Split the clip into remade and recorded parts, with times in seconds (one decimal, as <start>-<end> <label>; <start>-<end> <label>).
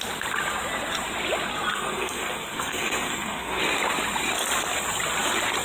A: 0.0-1.7 recorded; 1.7-3.6 remade; 3.6-5.6 recorded